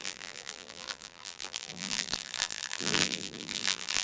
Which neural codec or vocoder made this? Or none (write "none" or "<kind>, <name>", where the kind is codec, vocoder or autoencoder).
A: vocoder, BigVGAN v2